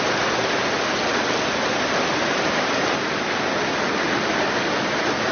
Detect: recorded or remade recorded